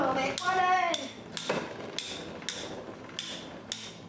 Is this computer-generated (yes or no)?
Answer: no